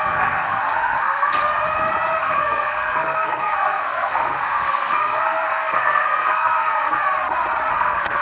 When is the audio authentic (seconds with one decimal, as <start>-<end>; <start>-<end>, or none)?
1.4-2.2; 7.0-7.7